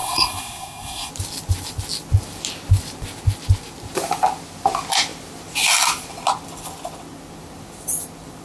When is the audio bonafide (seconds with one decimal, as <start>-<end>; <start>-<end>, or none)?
1.1-8.4

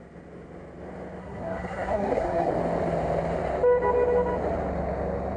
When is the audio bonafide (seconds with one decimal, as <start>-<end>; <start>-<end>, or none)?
0.0-1.2; 2.5-5.4

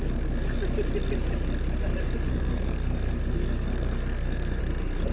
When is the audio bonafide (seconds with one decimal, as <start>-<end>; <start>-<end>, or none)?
0.0-2.3; 4.6-5.1